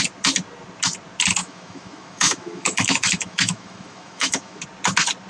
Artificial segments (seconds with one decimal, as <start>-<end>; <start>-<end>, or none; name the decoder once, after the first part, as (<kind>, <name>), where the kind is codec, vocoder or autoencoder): 1.4-4.6 (autoencoder, DAC-VAE)